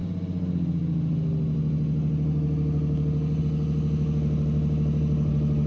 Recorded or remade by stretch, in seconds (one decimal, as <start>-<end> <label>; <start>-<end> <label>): 0.0-5.7 recorded